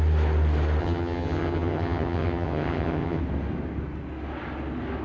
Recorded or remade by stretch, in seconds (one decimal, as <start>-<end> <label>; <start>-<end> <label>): 0.0-0.8 recorded; 0.8-3.2 remade; 3.2-5.0 recorded